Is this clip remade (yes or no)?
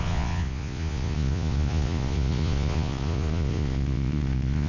yes